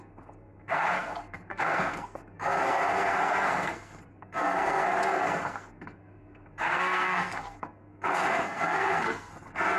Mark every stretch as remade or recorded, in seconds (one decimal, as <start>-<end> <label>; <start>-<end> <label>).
0.0-9.8 remade